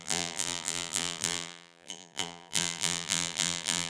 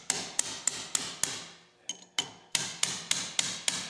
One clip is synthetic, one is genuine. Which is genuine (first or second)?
second